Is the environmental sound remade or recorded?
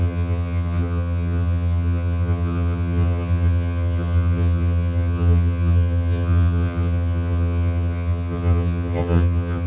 remade